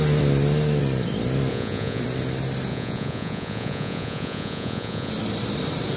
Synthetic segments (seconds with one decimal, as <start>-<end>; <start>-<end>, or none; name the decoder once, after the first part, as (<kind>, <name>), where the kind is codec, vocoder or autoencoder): 1.5-2.0 (vocoder, Vocos); 2.7-5.1